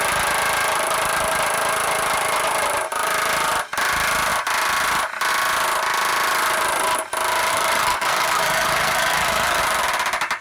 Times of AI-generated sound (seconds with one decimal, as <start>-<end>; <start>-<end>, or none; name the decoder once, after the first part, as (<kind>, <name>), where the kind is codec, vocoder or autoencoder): 7.5-9.6 (codec, SNAC)